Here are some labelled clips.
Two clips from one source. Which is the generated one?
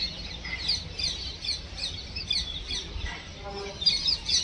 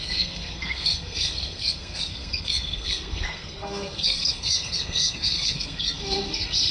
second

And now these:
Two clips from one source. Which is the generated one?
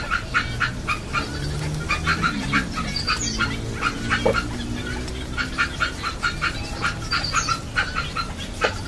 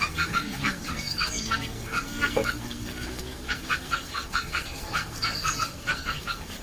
second